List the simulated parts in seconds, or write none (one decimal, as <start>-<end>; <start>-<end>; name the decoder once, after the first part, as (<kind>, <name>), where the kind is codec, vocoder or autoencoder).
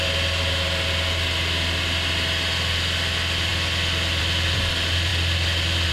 none